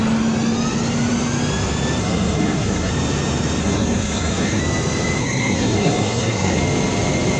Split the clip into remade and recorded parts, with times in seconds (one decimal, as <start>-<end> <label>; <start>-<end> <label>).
0.0-2.0 recorded; 2.0-2.9 remade; 2.9-3.6 recorded; 3.6-4.6 remade; 4.6-5.2 recorded; 5.2-6.6 remade; 6.6-7.4 recorded